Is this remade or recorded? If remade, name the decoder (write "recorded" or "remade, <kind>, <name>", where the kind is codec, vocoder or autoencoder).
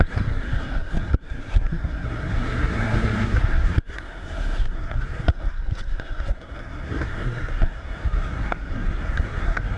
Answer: remade, codec, SNAC